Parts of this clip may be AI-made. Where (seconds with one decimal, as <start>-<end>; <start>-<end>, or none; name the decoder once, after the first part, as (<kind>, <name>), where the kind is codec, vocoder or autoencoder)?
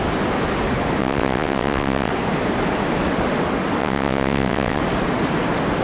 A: 1.0-2.1 (vocoder, WaveNeXt); 3.8-4.8